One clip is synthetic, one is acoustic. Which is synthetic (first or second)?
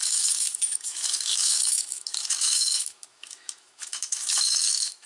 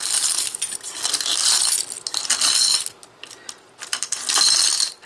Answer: first